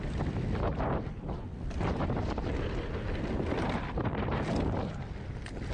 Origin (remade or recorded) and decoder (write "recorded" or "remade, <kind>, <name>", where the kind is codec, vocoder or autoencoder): recorded